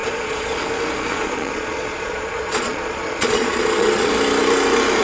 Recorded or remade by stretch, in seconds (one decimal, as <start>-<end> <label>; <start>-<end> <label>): 0.0-0.6 remade; 0.6-1.1 recorded; 1.1-4.1 remade; 4.1-5.0 recorded